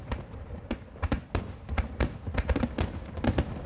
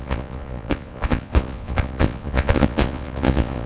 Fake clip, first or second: second